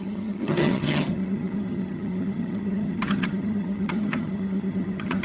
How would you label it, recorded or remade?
remade